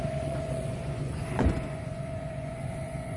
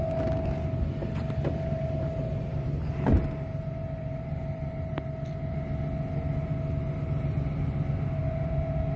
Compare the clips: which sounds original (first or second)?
second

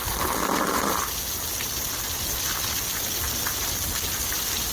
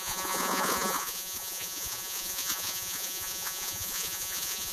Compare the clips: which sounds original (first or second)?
first